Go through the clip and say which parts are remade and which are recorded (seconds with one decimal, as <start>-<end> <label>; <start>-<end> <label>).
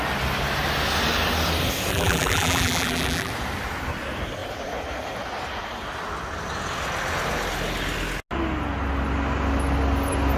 0.0-1.9 recorded; 1.9-3.3 remade; 3.3-10.4 recorded